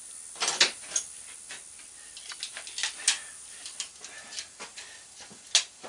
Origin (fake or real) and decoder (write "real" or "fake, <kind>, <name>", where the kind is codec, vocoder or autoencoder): real